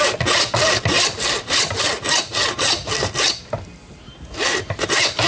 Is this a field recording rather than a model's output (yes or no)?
yes